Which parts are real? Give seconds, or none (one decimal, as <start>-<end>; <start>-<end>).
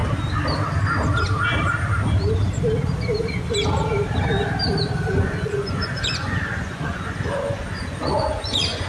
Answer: 0.0-5.1